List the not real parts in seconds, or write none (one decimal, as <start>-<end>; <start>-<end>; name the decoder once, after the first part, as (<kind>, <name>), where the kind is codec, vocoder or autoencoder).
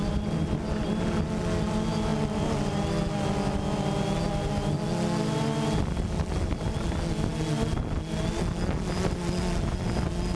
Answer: none